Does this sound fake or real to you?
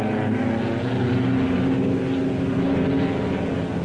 real